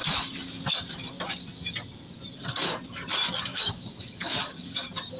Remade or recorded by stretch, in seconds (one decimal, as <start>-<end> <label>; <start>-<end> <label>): 0.0-3.5 recorded; 3.5-4.4 remade; 4.4-5.2 recorded